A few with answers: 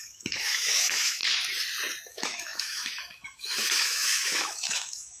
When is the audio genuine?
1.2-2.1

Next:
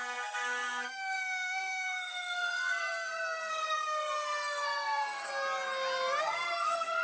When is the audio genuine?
5.3-6.2

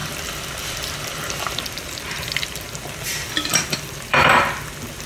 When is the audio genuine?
1.6-3.5; 4.5-5.1

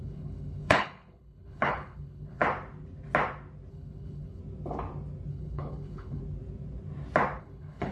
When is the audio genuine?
2.4-3.7; 4.4-5.3; 6.2-7.4